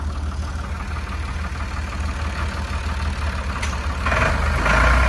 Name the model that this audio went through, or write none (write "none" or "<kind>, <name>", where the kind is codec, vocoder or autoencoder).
none